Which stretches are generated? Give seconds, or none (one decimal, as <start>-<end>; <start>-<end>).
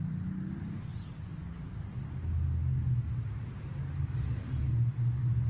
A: 0.0-1.4; 3.7-4.6